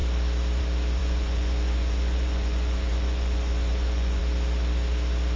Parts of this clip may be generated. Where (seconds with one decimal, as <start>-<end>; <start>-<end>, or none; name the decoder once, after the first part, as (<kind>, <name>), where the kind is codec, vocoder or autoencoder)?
1.0-4.2 (vocoder, Vocos)